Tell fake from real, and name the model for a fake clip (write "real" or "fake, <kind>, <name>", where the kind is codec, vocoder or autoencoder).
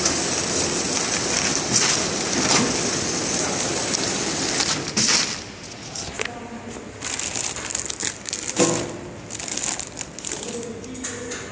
real